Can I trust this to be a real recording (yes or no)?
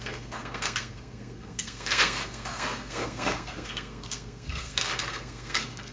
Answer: no